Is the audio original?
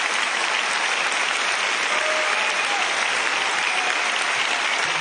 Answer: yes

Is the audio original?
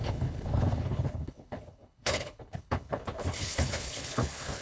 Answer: no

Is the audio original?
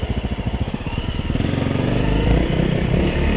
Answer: no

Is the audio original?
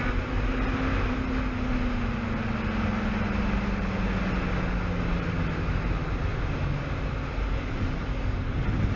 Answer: yes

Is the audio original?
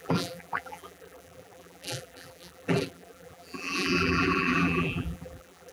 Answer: no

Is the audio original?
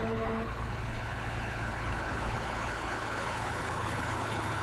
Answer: no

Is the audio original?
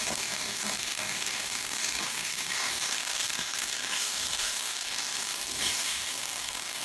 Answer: no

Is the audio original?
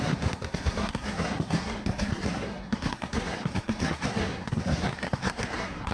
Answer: no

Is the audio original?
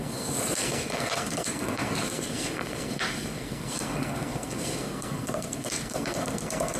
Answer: no